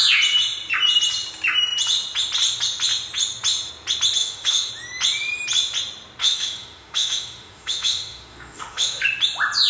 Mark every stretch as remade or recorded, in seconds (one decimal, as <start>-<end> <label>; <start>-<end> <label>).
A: 0.0-4.2 recorded; 4.2-4.7 remade; 4.7-6.2 recorded; 6.2-9.0 remade; 9.0-9.7 recorded